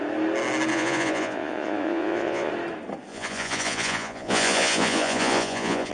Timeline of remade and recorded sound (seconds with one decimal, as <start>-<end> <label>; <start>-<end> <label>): 0.0-0.7 recorded; 0.7-2.5 remade; 2.5-3.1 recorded; 3.1-5.9 remade